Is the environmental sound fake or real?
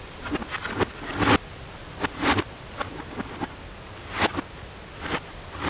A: real